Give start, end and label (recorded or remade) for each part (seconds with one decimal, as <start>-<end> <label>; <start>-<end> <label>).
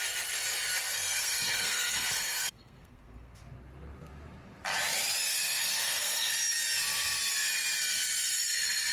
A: 0.0-0.9 recorded; 0.9-3.4 remade; 3.4-5.3 recorded; 5.3-6.3 remade; 6.3-8.9 recorded